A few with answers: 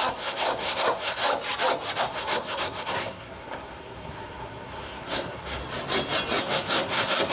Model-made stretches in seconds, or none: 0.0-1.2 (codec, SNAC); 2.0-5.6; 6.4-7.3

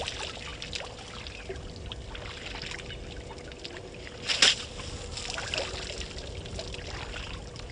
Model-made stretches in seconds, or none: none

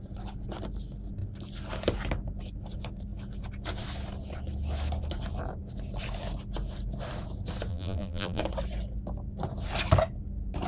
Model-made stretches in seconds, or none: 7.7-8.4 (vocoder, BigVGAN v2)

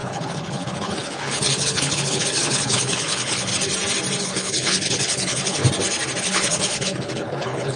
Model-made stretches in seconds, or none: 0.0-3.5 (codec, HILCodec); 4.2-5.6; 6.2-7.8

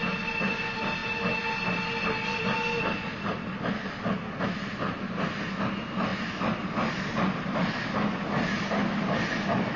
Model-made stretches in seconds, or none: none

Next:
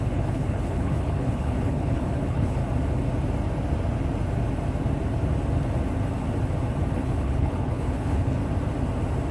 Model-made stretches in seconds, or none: 0.0-2.6 (codec, HILCodec); 6.9-8.4

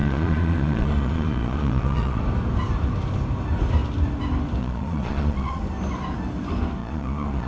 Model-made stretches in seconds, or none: 0.0-2.2 (vocoder, Vocos); 4.6-5.6; 6.8-7.5

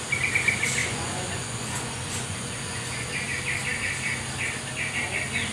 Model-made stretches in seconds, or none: 0.8-3.1 (vocoder, Vocos)